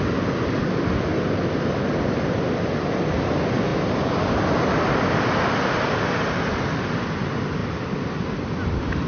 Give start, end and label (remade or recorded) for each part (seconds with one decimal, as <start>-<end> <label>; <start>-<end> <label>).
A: 0.0-9.1 recorded